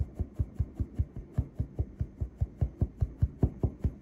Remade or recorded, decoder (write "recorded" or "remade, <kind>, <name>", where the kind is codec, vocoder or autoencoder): recorded